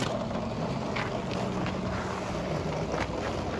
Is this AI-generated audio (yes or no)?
no